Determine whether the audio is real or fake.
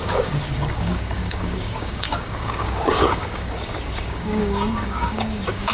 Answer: fake